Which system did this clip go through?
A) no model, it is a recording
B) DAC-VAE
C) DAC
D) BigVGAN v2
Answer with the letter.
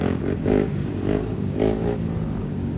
C